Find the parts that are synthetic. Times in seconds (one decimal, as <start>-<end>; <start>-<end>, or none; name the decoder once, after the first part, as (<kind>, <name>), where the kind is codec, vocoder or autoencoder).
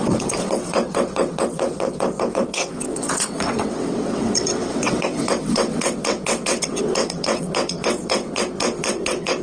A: 0.0-9.4 (vocoder, WaveNeXt)